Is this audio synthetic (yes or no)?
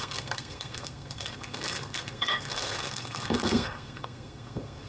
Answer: yes